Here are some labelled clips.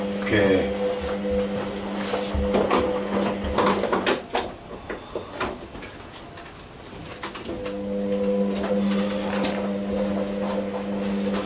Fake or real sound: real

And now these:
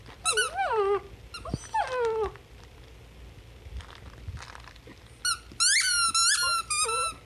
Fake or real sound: real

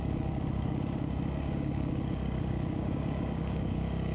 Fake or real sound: fake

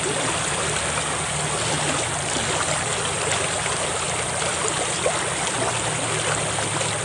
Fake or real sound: real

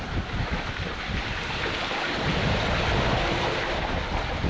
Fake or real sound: real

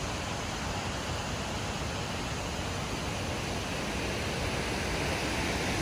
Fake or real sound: real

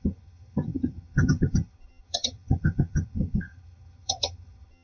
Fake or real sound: fake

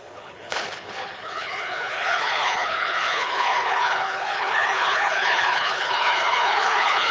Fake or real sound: fake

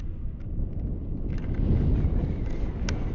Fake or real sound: real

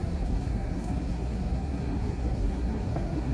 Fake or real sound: fake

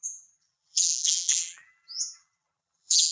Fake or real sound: fake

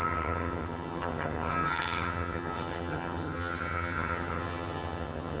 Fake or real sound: fake